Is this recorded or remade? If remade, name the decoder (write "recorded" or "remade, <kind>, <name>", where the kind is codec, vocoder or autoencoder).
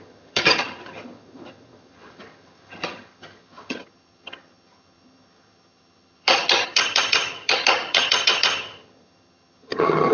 remade, vocoder, HiFi-GAN